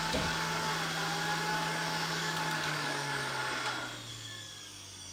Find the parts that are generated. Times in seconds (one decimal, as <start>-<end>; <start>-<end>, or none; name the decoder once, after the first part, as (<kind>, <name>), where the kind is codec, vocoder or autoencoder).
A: 0.0-0.7 (codec, DAC); 1.5-3.4; 4.1-5.1